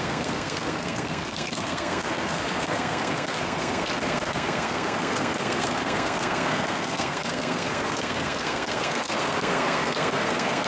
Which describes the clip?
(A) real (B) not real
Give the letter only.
B